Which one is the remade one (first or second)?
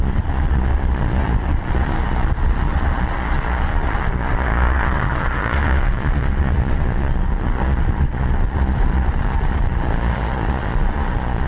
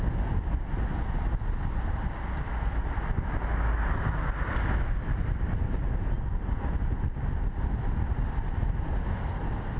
first